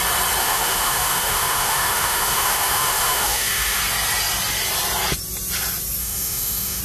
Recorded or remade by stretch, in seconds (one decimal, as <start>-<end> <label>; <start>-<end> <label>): 0.0-0.4 recorded; 0.4-3.8 remade; 3.8-6.0 recorded; 6.0-6.8 remade